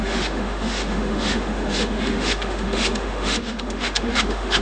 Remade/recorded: remade